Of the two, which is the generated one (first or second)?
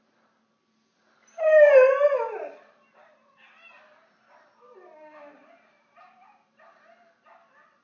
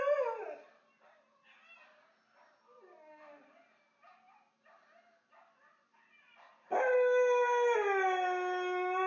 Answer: first